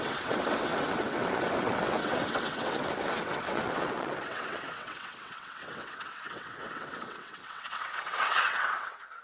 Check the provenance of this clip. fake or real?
fake